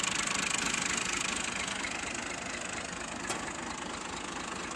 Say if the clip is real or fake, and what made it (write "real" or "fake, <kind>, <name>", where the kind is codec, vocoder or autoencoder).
real